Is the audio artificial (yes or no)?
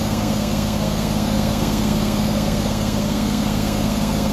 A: yes